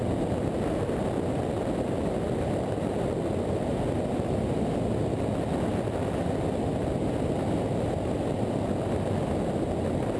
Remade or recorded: recorded